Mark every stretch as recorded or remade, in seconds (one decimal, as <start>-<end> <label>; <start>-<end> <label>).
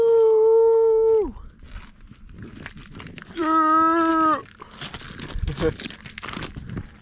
0.0-7.0 recorded